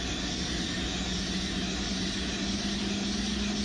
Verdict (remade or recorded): recorded